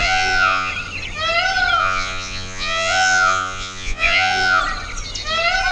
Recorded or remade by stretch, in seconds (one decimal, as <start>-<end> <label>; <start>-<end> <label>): 0.0-0.7 remade; 0.7-1.8 recorded; 1.8-4.6 remade; 4.6-5.7 recorded